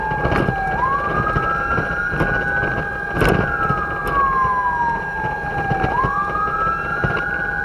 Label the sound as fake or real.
real